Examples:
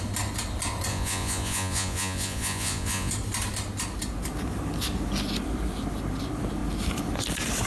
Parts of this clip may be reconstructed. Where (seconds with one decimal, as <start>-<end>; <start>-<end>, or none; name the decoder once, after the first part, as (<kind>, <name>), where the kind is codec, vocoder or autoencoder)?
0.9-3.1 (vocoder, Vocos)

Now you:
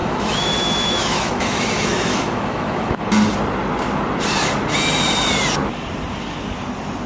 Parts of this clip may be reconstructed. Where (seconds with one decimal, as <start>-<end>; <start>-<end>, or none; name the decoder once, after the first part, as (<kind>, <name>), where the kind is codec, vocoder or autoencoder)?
0.0-3.0 (autoencoder, DAC-VAE)

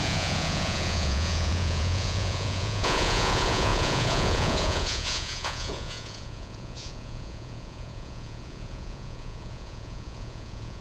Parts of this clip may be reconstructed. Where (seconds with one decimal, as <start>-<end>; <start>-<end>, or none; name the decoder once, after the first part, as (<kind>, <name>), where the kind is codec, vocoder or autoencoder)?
0.0-10.8 (vocoder, Vocos)

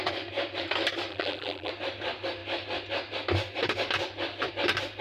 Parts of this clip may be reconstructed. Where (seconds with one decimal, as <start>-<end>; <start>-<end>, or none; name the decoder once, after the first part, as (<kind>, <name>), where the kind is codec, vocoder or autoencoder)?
1.1-1.7 (vocoder, BigVGAN v2)

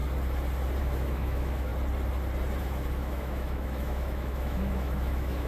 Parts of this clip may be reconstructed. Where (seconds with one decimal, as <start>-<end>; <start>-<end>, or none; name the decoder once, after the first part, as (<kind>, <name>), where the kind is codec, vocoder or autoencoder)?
0.8-1.7 (autoencoder, DAC-VAE); 2.6-5.5

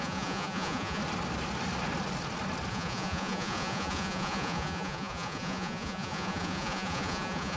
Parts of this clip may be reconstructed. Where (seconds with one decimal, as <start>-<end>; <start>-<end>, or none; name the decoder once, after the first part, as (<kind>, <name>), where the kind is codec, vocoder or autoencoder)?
0.0-1.0 (vocoder, Vocos); 2.7-7.6